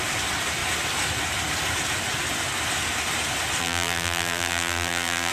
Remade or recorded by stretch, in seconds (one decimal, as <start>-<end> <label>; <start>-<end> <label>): 0.0-3.6 recorded; 3.6-5.3 remade